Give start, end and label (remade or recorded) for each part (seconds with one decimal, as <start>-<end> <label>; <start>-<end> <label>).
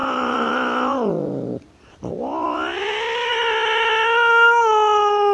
0.0-0.5 remade; 0.5-0.9 recorded; 0.9-2.1 remade; 2.1-5.3 recorded